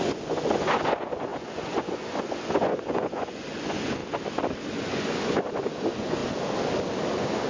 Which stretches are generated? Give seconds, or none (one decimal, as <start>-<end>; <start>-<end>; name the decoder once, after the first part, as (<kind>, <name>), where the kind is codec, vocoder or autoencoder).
0.0-4.0 (vocoder, Vocos); 4.7-6.2; 7.1-7.5